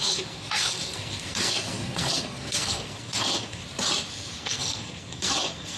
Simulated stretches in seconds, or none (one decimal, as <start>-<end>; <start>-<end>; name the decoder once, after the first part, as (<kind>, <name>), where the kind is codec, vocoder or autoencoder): 0.0-3.6 (codec, SNAC); 4.1-5.8